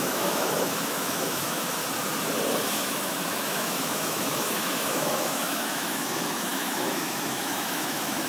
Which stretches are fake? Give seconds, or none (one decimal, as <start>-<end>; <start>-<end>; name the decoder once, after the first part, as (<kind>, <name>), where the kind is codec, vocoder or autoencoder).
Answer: 0.0-1.8 (autoencoder, DAC-VAE); 2.7-8.3

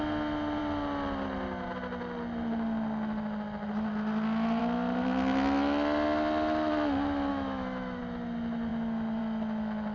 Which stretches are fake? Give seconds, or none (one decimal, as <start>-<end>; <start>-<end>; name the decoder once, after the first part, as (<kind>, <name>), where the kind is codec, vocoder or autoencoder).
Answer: 7.3-8.0 (autoencoder, DAC-VAE)

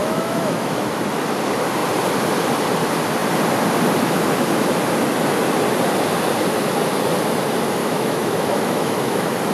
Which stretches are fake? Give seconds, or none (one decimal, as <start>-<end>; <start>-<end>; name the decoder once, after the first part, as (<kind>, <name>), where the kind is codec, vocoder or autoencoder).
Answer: 0.0-0.8 (autoencoder, DAC-VAE); 7.8-9.5

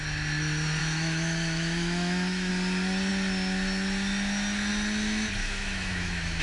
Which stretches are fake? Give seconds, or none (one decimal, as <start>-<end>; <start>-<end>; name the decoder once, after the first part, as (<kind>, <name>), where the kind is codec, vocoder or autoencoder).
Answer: 0.8-2.5 (autoencoder, DAC-VAE); 5.4-6.4

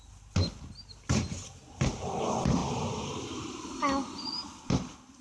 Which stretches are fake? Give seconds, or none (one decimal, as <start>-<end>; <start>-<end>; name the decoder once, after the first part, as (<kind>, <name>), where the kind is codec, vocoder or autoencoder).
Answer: none

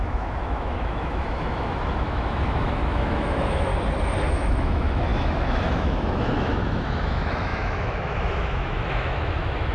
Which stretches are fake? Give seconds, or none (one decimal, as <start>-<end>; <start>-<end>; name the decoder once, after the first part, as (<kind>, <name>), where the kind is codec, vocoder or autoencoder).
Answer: 0.0-3.7 (autoencoder, DAC-VAE); 4.3-9.7

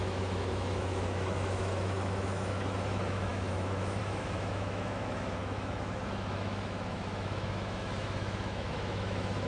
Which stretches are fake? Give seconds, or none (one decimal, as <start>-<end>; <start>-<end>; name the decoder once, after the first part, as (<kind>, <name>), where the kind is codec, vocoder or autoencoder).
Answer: 0.0-9.5 (autoencoder, DAC-VAE)

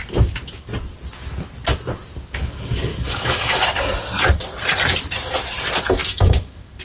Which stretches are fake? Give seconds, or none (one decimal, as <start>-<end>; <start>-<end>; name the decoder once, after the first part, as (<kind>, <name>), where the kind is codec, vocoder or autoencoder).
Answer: 2.9-3.6 (autoencoder, DAC-VAE); 6.0-6.8